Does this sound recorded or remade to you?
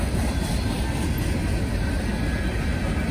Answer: recorded